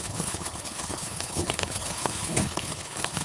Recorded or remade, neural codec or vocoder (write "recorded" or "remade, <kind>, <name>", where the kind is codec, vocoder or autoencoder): remade, codec, HILCodec